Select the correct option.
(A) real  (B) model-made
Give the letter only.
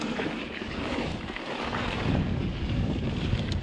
B